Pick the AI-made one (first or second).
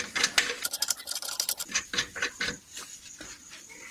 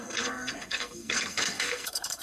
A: second